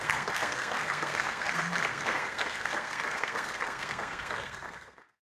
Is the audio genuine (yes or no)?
no